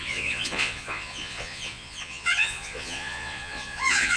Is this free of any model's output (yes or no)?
no